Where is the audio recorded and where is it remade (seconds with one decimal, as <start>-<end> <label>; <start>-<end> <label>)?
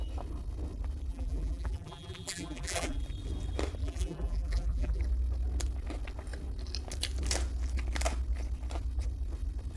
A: 0.0-1.1 recorded; 1.1-3.0 remade; 3.0-3.8 recorded; 3.8-5.0 remade; 5.0-9.8 recorded